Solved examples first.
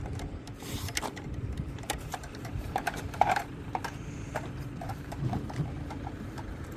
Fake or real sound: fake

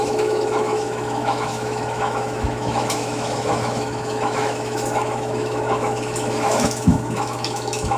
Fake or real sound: fake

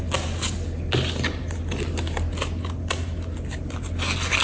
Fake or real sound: real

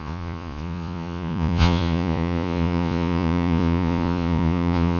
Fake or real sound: fake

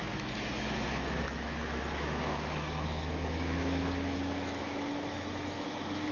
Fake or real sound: fake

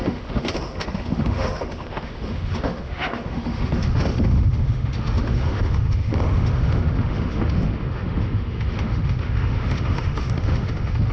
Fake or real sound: fake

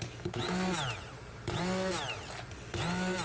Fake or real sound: real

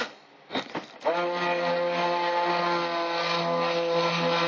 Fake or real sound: real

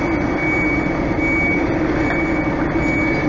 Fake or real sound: real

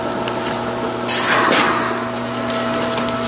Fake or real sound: real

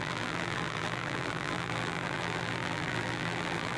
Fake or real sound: fake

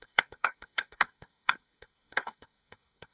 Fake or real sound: fake